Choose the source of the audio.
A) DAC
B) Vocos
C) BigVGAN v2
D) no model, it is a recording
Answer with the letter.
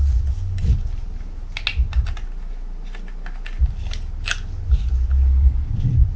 D